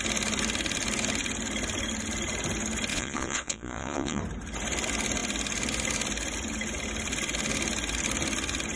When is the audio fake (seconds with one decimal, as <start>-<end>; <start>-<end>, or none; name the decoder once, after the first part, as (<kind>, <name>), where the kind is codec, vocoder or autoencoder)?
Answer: 2.9-4.2 (vocoder, Vocos)